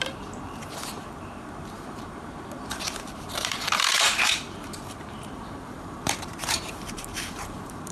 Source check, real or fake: fake